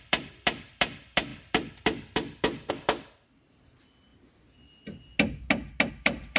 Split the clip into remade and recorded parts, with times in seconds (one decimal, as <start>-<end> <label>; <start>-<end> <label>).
0.0-4.1 remade; 4.1-5.9 recorded; 5.9-6.4 remade